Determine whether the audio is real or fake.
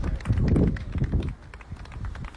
real